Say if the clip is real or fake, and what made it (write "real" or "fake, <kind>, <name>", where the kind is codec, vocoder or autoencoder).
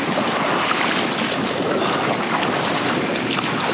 real